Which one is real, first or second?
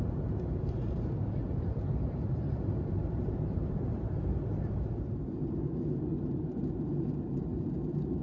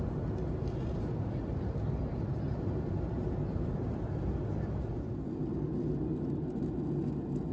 second